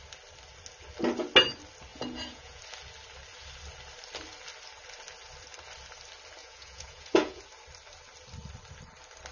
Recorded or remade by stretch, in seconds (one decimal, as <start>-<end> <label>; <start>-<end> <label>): 0.0-1.9 recorded; 1.9-2.6 remade; 2.6-6.4 recorded; 6.4-7.4 remade; 7.4-9.3 recorded